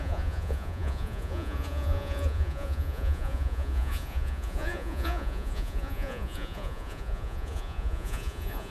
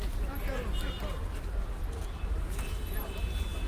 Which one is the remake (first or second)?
first